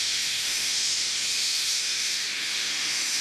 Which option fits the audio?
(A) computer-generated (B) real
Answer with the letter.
A